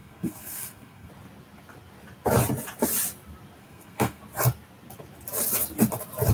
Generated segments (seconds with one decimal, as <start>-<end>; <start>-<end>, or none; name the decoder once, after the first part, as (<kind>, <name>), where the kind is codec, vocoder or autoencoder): 0.0-1.1 (codec, SNAC); 3.6-4.2